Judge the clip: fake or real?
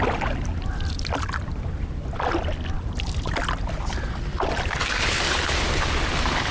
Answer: real